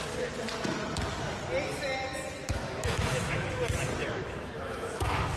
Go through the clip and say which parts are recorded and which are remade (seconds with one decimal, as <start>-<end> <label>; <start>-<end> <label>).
0.0-2.4 recorded; 2.4-3.5 remade; 3.5-4.0 recorded; 4.0-5.4 remade